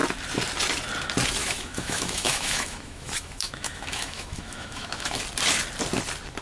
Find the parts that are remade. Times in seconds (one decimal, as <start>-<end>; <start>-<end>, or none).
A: 1.4-5.2